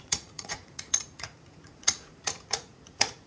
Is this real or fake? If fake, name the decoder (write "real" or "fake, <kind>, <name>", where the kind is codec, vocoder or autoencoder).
fake, vocoder, Vocos